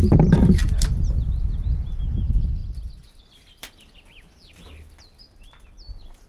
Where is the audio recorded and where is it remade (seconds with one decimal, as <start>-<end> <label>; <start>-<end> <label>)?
0.0-0.6 recorded; 0.6-1.4 remade; 1.4-2.6 recorded; 2.6-3.2 remade; 3.2-6.3 recorded